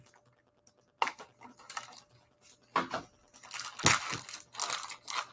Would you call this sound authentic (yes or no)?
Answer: yes